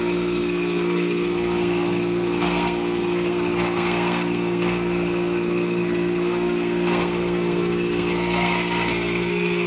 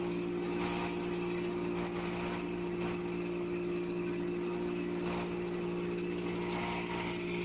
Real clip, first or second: second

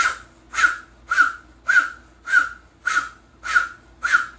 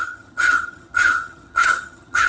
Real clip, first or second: first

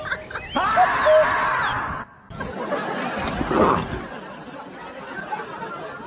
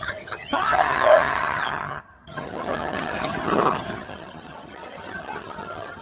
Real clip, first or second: first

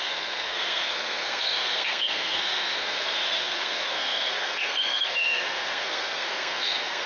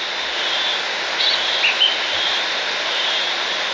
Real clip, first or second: second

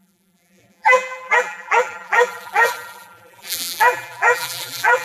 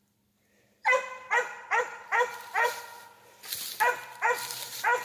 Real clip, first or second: second